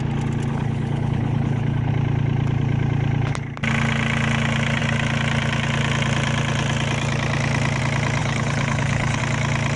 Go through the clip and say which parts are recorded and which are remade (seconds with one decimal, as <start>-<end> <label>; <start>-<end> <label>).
0.0-0.5 recorded; 0.5-1.9 remade; 1.9-8.2 recorded; 8.2-9.2 remade; 9.2-9.8 recorded